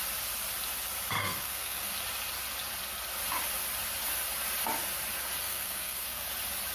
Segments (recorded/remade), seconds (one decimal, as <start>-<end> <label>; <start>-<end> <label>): 0.0-1.2 recorded; 1.2-1.9 remade; 1.9-5.4 recorded; 5.4-6.3 remade; 6.3-6.7 recorded